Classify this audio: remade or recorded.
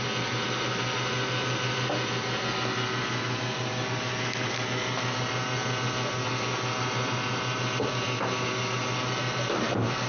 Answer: recorded